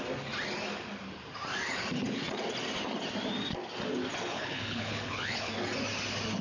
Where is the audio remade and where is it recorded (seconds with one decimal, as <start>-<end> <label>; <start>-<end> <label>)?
0.0-4.3 recorded; 4.3-5.5 remade; 5.5-6.4 recorded